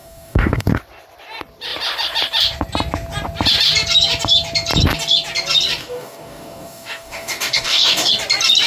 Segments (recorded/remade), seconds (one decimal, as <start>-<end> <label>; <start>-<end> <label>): 0.0-0.8 remade; 0.8-5.8 recorded; 5.8-8.1 remade; 8.1-8.7 recorded